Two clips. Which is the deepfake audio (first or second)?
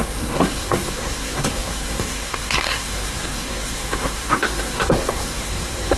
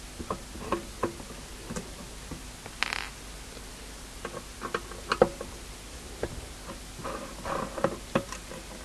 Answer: first